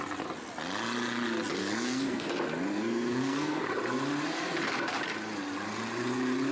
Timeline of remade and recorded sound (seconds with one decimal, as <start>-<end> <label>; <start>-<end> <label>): 0.0-1.6 recorded; 1.6-2.3 remade; 2.3-2.7 recorded; 2.7-3.6 remade; 3.6-6.5 recorded